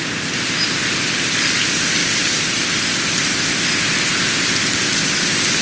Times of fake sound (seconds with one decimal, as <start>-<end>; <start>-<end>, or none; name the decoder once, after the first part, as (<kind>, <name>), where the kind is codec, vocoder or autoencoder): 2.0-2.9 (vocoder, BigVGAN v2)